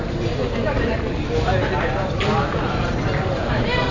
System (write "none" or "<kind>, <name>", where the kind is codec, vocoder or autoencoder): none